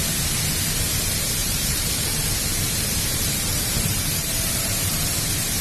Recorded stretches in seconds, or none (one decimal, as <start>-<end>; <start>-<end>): 0.0-1.4; 2.3-3.1; 4.7-5.6